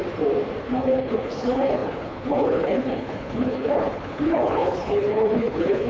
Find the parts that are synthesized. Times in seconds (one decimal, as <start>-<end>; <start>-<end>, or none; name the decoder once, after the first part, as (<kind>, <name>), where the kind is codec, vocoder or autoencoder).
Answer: 0.6-5.9 (codec, HILCodec)